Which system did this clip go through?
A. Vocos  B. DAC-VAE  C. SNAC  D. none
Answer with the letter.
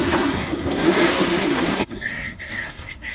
C